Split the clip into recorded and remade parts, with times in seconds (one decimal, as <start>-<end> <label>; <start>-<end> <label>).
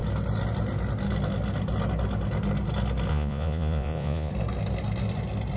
0.0-3.1 recorded; 3.1-4.3 remade; 4.3-5.6 recorded